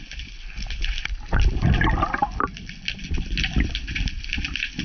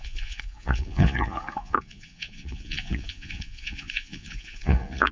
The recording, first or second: first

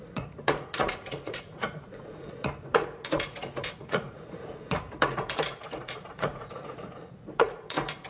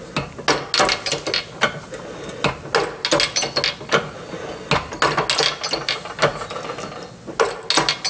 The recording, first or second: second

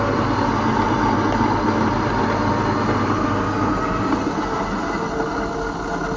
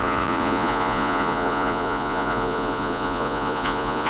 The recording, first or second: first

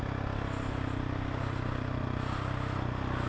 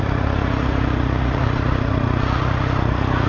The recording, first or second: first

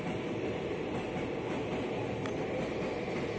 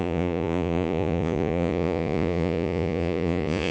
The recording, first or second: first